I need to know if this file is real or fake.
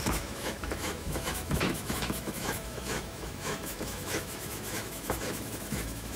fake